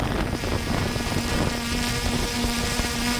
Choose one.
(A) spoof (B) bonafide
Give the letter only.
B